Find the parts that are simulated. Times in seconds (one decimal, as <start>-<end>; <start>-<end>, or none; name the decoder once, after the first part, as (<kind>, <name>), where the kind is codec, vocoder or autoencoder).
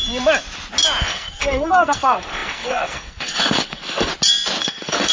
1.0-4.1 (codec, SNAC); 4.6-5.1